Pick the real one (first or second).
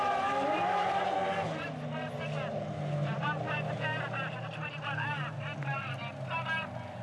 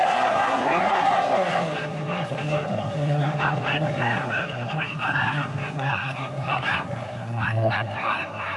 first